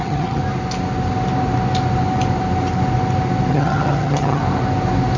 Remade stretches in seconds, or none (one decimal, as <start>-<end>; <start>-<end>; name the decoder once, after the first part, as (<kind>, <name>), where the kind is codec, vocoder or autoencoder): 0.0-0.4 (vocoder, HiFi-GAN); 3.5-4.4